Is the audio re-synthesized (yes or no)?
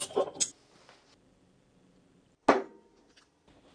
no